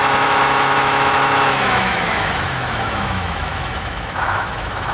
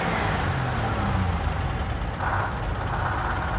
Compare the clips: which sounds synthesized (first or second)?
first